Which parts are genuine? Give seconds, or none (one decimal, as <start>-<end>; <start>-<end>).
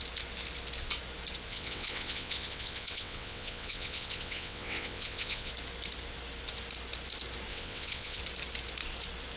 0.0-1.5; 5.5-7.5; 8.2-9.4